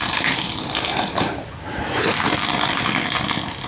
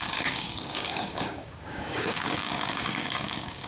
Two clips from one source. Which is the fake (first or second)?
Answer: second